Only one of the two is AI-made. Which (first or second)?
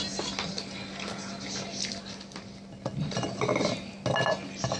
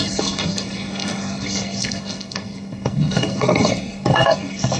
second